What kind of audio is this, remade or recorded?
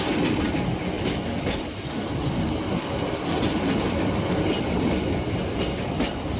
recorded